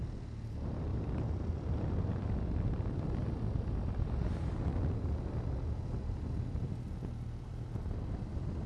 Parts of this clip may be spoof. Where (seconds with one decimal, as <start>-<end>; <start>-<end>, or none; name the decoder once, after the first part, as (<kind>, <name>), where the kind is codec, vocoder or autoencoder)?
0.9-1.5 (vocoder, BigVGAN v2)